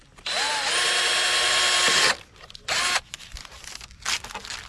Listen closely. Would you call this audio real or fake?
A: real